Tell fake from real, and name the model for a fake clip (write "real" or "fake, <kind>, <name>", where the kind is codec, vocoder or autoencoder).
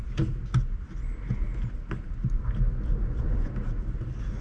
real